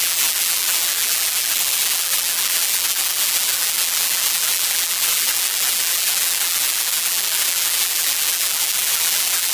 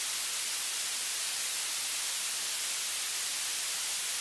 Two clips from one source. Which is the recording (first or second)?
second